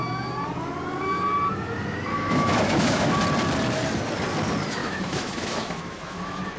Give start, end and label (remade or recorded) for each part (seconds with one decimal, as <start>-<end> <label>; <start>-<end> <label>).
0.0-2.1 recorded; 2.1-3.1 remade; 3.1-4.8 recorded; 4.8-6.6 remade